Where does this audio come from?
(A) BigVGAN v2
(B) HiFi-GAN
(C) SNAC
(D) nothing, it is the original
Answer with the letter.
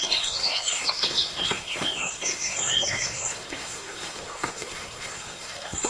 C